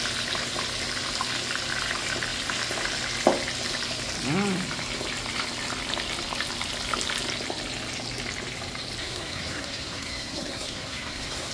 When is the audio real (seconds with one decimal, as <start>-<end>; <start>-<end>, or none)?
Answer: 0.0-9.0